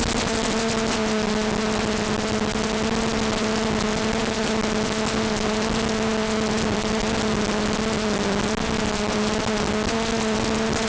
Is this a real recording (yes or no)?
yes